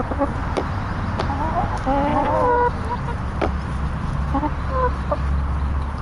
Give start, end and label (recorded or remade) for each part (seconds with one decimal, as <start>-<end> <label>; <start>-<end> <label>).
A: 0.0-0.4 recorded; 0.4-1.2 remade; 1.2-2.1 recorded; 2.1-4.4 remade; 4.4-6.0 recorded